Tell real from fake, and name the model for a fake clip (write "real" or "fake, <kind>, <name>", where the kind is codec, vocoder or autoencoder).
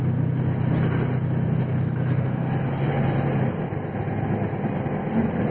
real